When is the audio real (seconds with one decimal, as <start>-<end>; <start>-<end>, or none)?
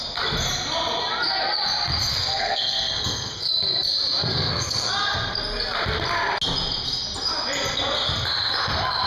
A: 0.0-2.1; 3.5-4.3; 4.9-9.1